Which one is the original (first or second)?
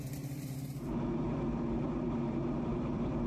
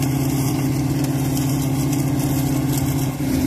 second